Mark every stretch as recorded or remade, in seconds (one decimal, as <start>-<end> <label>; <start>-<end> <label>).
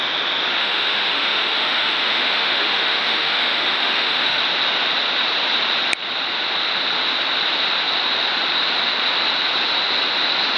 0.0-0.6 recorded; 0.6-4.4 remade; 4.4-10.6 recorded